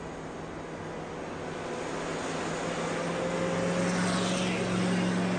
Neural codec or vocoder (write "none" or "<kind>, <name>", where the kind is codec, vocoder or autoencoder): none